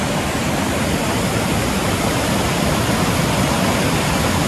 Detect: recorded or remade recorded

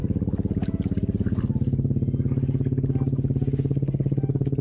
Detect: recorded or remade recorded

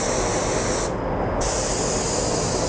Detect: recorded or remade recorded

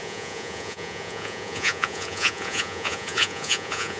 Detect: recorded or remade remade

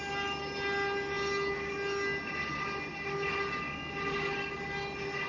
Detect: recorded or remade recorded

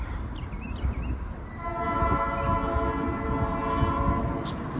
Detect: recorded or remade recorded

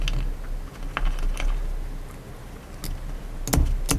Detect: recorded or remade recorded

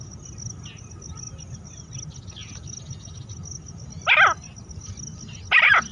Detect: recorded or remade recorded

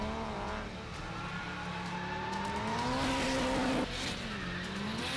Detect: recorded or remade recorded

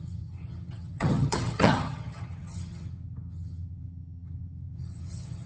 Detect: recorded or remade remade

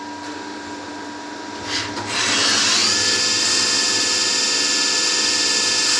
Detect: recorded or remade recorded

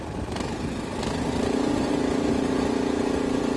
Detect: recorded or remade recorded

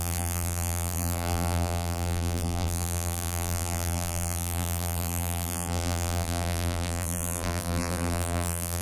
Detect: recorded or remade remade